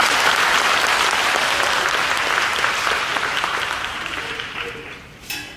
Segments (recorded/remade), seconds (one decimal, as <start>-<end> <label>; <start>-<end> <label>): 0.0-3.1 recorded; 3.1-4.6 remade; 4.6-5.6 recorded